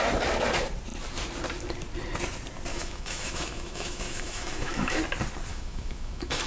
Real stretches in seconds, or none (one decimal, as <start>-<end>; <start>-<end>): 0.0-2.7; 5.0-5.5